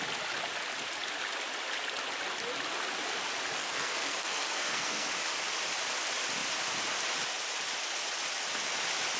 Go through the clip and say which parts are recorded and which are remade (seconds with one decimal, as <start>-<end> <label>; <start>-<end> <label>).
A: 0.0-3.6 recorded; 3.6-5.1 remade; 5.1-9.2 recorded